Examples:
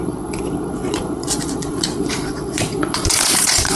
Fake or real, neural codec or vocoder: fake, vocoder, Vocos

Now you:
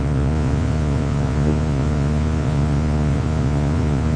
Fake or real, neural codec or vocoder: fake, vocoder, Vocos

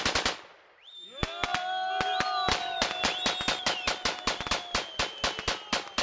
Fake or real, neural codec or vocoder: real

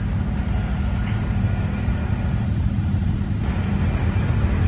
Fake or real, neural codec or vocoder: real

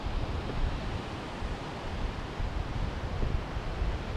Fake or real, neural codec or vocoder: real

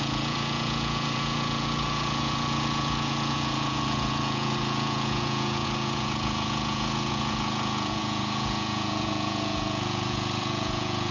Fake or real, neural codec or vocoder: fake, vocoder, Vocos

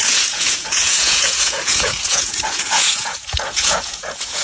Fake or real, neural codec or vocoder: fake, vocoder, Vocos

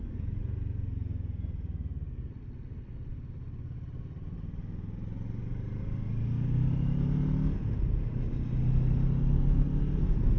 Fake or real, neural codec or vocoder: real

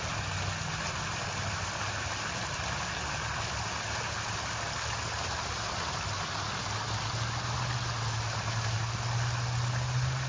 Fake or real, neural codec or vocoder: real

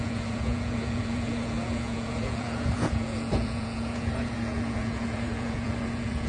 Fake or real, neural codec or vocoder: fake, vocoder, Vocos